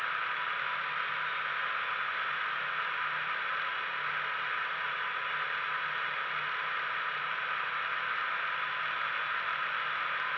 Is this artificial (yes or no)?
no